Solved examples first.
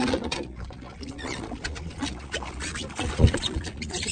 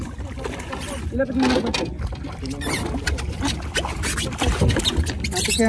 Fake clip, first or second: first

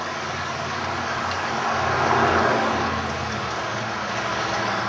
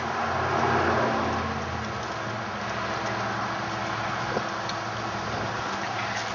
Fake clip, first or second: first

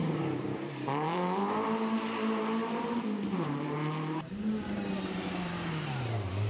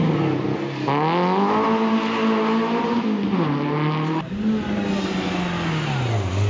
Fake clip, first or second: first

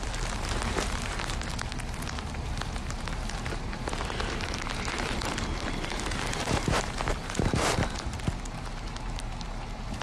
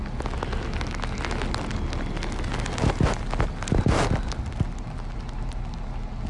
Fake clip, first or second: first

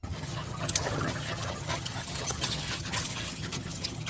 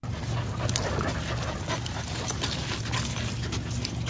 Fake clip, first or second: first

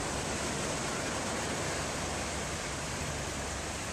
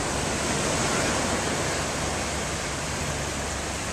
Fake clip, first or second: first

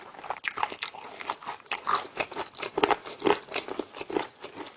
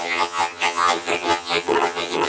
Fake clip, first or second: second